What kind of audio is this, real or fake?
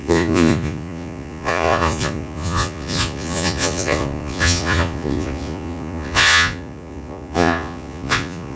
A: fake